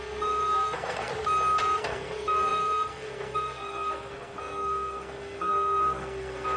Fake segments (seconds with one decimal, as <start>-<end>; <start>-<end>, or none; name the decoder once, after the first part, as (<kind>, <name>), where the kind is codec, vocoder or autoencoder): 0.0-1.1 (codec, SNAC); 1.6-6.6